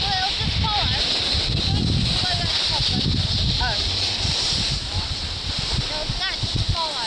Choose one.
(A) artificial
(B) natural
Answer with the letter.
B